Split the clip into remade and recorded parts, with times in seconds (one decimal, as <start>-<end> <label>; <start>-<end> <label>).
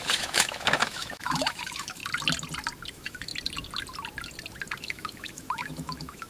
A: 0.0-2.0 remade; 2.0-2.9 recorded; 2.9-3.3 remade; 3.3-4.8 recorded; 4.8-6.3 remade